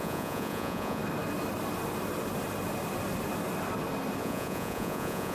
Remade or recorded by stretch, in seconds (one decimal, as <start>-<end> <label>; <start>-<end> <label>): 0.0-1.0 remade; 1.0-4.2 recorded; 4.2-5.3 remade